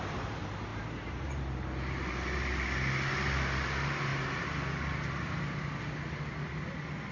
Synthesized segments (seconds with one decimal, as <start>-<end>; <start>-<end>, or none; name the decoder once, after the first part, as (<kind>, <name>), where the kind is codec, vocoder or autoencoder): 0.7-1.4 (vocoder, BigVGAN v2); 4.1-4.6